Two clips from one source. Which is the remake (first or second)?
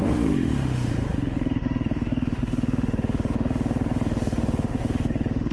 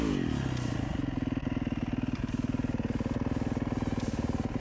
first